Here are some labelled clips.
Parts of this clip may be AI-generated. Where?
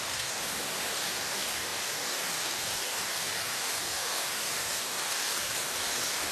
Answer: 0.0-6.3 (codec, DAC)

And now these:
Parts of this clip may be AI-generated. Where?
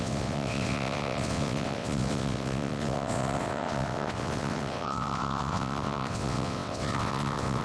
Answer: 0.0-7.6 (vocoder, WaveNeXt)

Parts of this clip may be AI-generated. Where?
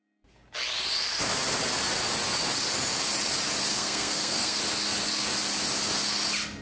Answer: 3.7-4.6 (codec, SNAC)